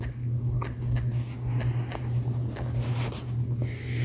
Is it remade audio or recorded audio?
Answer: recorded